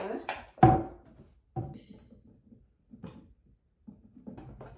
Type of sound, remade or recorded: recorded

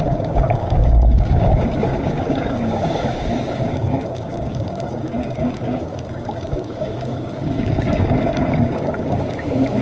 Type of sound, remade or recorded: remade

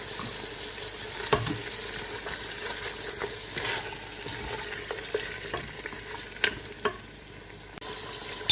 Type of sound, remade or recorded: recorded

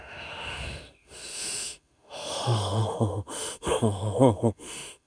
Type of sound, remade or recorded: remade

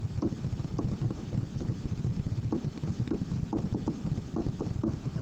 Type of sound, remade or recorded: recorded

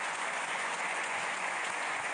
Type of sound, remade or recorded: remade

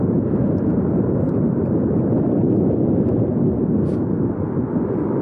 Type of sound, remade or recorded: recorded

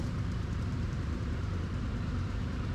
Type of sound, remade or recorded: remade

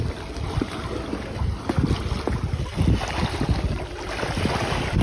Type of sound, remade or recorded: recorded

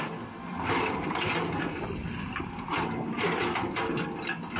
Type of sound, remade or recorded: recorded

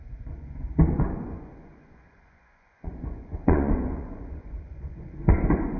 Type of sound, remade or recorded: remade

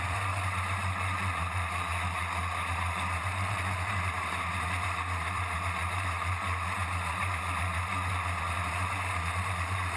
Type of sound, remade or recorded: remade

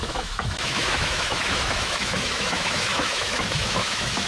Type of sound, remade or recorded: remade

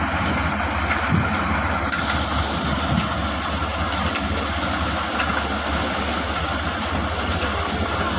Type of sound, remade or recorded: recorded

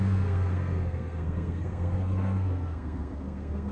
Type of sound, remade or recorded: remade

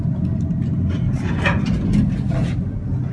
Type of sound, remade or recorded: recorded